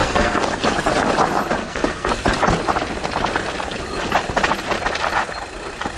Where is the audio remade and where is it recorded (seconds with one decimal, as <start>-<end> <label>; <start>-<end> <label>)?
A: 0.0-0.9 remade; 0.9-1.6 recorded; 1.6-2.1 remade; 2.1-6.0 recorded